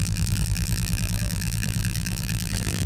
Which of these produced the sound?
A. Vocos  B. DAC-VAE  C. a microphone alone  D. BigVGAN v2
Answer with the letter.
D